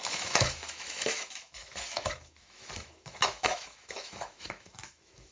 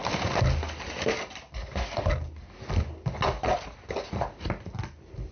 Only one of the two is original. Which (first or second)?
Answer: second